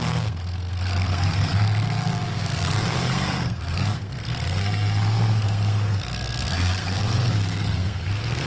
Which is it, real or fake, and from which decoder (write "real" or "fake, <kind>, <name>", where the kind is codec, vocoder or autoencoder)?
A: fake, codec, SNAC